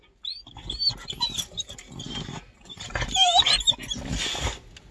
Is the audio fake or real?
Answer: real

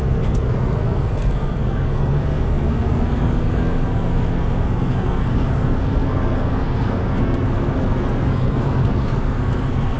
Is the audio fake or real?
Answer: fake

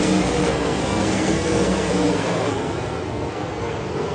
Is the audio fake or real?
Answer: fake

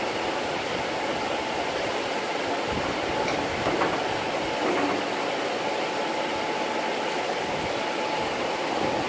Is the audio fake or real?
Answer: real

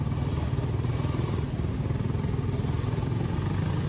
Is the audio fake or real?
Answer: real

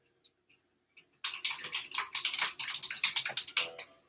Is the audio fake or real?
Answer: real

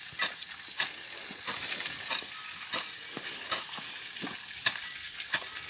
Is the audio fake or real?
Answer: real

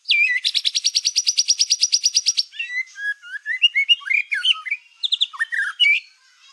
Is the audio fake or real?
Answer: real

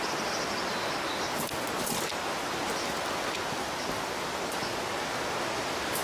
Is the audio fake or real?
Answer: real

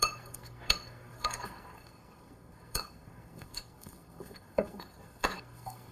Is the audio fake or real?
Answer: fake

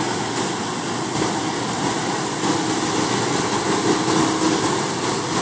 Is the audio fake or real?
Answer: real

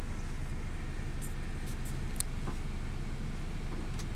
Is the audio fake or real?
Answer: real